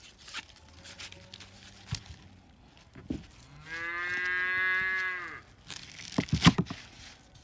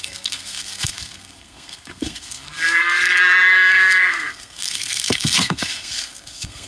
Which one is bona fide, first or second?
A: first